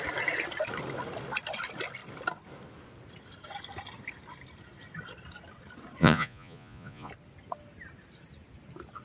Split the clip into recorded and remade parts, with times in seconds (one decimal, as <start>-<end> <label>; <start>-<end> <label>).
0.0-6.0 recorded; 6.0-7.1 remade; 7.1-9.0 recorded